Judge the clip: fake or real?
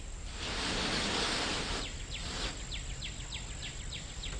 real